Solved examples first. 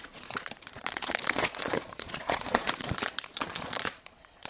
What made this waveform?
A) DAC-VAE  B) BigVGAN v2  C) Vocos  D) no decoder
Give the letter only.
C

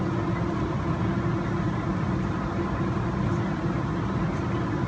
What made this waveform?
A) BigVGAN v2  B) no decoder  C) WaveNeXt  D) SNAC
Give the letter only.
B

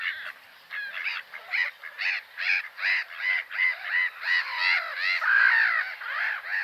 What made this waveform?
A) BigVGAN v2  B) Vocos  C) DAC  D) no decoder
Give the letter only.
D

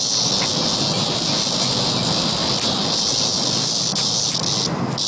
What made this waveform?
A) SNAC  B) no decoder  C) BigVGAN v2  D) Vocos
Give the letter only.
B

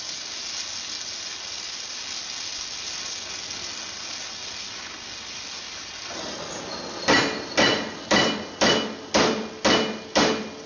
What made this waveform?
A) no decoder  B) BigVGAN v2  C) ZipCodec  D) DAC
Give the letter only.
A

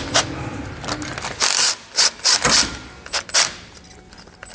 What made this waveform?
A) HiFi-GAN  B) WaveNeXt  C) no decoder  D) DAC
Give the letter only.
C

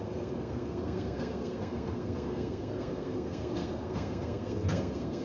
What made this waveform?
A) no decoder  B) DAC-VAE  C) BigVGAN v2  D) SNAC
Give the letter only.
D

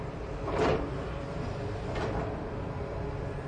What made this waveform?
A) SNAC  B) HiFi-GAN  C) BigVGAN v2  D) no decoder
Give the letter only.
C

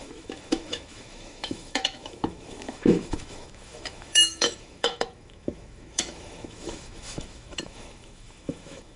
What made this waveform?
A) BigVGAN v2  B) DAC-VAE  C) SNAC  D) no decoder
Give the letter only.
B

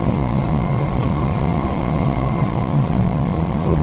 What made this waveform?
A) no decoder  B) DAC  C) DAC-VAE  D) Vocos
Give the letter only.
D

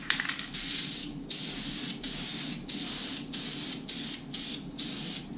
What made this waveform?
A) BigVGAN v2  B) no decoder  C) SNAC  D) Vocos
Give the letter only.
B